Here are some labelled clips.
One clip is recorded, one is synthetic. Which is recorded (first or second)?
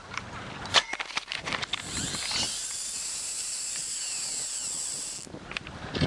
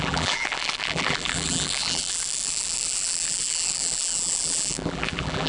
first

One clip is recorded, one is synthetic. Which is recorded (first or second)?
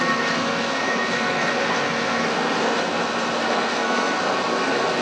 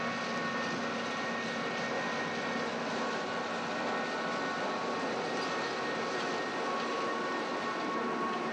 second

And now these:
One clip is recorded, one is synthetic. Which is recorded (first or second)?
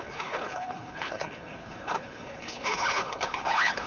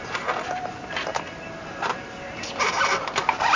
second